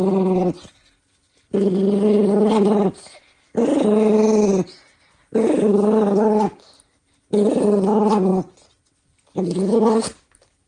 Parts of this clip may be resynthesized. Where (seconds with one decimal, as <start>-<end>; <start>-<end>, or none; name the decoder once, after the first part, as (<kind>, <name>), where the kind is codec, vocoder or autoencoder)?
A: none